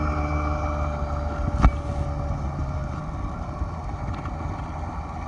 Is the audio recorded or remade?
recorded